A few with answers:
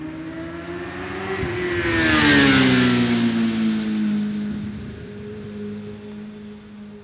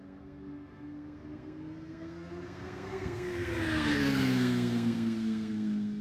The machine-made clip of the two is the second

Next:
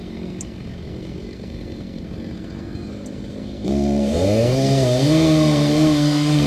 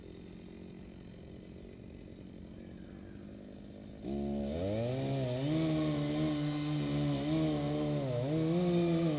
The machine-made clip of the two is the first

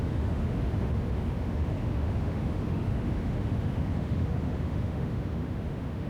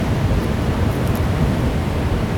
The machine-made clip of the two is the first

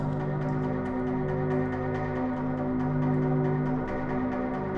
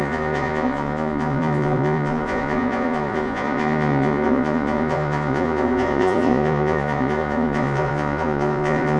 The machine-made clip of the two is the second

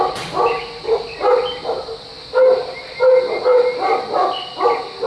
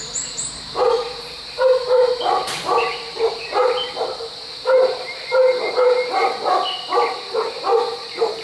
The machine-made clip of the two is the second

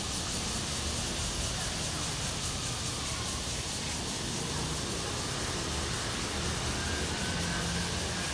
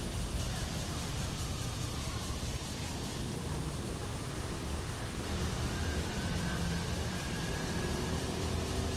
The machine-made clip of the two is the second